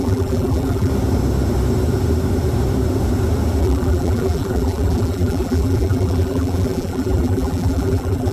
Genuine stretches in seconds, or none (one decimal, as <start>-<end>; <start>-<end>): 0.9-3.6